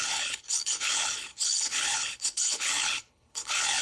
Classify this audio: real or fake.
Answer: fake